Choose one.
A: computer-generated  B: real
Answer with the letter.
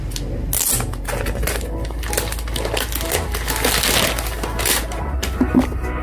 B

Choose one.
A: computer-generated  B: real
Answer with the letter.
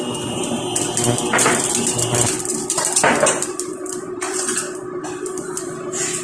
A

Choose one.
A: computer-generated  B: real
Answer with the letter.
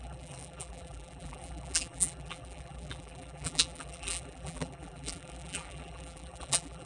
A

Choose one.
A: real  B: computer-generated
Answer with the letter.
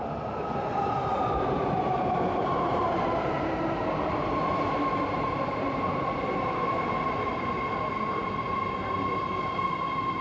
B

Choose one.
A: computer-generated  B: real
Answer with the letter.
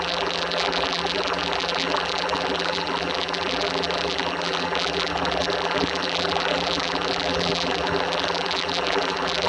A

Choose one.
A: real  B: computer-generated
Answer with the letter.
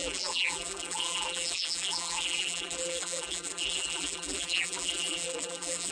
B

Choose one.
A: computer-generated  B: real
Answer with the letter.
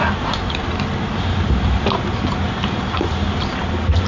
B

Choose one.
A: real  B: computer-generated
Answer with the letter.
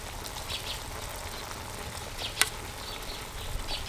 A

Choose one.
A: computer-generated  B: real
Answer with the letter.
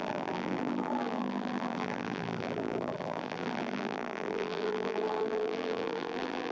A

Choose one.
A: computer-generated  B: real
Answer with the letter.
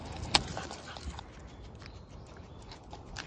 A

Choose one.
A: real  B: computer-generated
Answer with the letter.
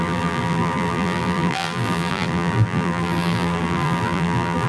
B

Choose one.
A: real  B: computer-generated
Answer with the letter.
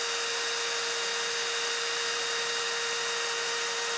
B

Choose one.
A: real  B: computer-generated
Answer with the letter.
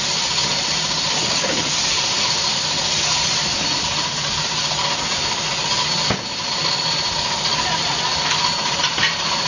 A